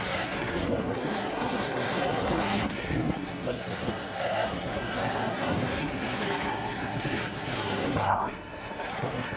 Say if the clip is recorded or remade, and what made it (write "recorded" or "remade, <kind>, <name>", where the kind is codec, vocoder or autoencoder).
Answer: remade, codec, SNAC